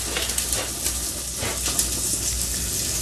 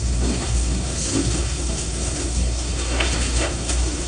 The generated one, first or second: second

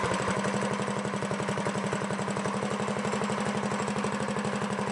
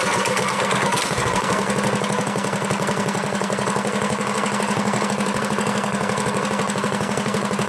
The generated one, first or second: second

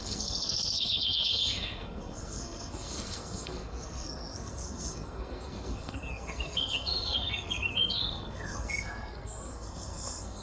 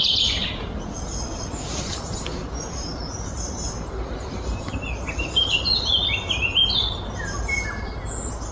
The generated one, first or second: first